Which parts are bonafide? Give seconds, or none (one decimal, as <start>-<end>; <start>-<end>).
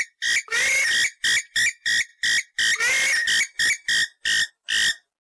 0.0-5.4